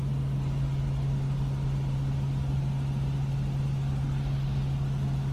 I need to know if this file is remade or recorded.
recorded